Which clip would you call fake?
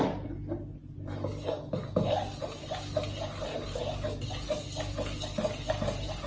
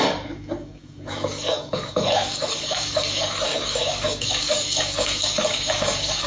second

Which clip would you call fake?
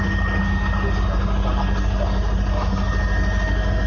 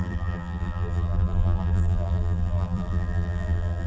second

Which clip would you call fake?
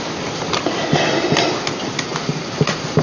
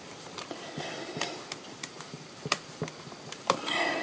second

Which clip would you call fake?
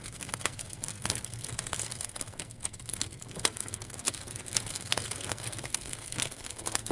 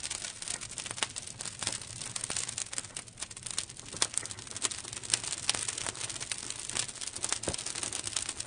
first